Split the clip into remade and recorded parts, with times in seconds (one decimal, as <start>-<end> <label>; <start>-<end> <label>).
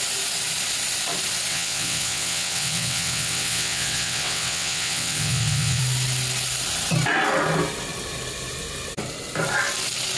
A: 0.0-1.5 recorded; 1.5-5.8 remade; 5.8-10.2 recorded